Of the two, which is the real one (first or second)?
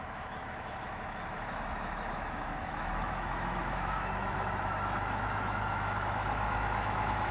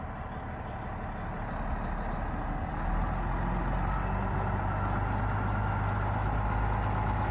second